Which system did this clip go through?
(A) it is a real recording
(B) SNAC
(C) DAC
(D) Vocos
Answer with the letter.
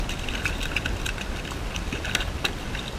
A